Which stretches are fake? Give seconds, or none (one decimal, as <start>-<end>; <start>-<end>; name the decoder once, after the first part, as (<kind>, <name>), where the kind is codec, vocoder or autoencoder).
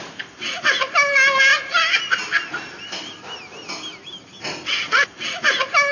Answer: 1.5-2.1 (vocoder, BigVGAN v2)